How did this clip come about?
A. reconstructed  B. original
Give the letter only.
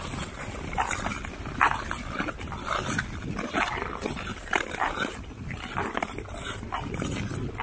B